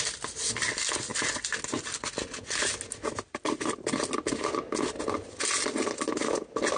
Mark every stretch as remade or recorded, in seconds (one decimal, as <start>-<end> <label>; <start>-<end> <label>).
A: 0.0-6.8 recorded